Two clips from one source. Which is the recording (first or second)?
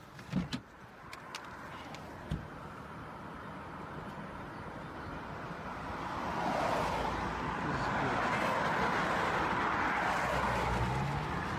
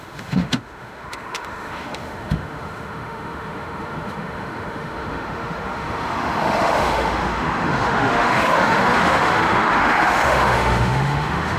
first